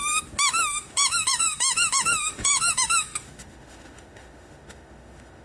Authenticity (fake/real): fake